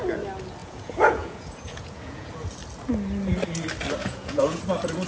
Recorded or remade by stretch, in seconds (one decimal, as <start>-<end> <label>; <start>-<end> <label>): 0.0-0.6 recorded; 0.6-2.3 remade; 2.3-4.0 recorded; 4.0-4.6 remade; 4.6-5.1 recorded